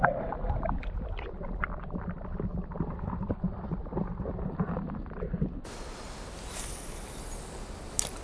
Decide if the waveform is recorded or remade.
recorded